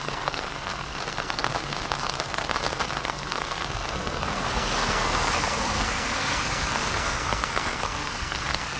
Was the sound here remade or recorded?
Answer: remade